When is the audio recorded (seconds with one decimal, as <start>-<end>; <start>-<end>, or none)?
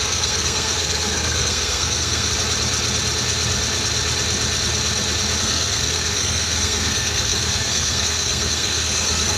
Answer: 2.3-5.4